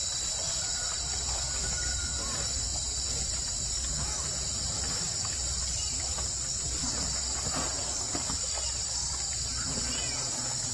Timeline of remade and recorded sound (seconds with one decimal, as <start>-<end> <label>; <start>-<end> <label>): 0.0-2.7 remade; 2.7-3.2 recorded; 3.2-10.7 remade